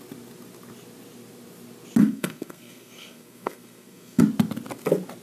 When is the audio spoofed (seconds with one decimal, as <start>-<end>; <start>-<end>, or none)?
2.0-4.2